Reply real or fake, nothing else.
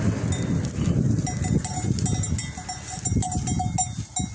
real